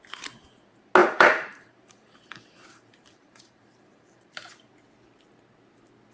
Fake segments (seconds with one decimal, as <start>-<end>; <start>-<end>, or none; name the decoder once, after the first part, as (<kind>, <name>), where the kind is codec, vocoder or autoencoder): 1.0-4.7 (vocoder, BigVGAN v2)